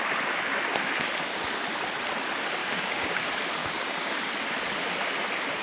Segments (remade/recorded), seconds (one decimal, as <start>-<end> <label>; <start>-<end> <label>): 0.0-2.6 recorded; 2.6-3.2 remade; 3.2-3.6 recorded; 3.6-4.3 remade; 4.3-5.6 recorded